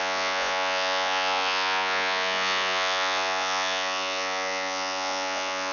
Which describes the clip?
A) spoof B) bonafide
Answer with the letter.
A